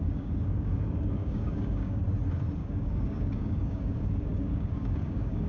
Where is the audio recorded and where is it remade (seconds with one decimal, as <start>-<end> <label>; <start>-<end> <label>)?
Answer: 0.0-2.0 remade; 2.0-2.6 recorded; 2.6-5.5 remade